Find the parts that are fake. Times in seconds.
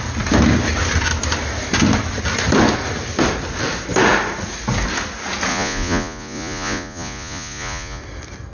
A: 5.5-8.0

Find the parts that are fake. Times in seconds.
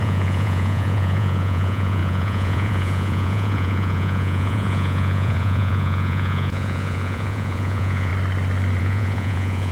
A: 0.0-8.1; 8.8-9.7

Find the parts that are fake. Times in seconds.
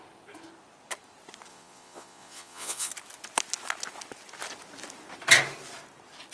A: 1.5-2.9